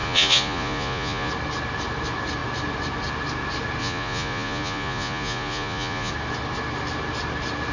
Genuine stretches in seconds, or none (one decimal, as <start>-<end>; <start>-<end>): 1.3-3.8; 6.1-7.7